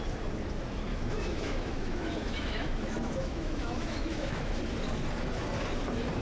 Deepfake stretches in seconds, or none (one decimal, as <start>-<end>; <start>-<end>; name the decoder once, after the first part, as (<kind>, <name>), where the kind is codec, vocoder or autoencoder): 0.9-4.6 (autoencoder, DAC-VAE)